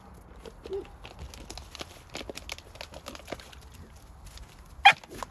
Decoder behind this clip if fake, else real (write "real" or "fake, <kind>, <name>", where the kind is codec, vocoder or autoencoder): real